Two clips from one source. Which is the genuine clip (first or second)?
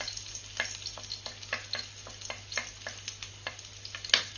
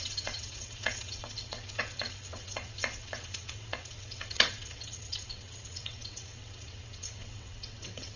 first